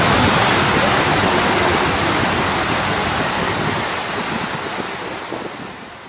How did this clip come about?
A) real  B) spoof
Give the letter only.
A